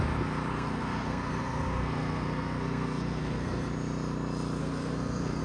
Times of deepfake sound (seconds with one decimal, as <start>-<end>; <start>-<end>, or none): 0.5-3.7; 4.6-5.4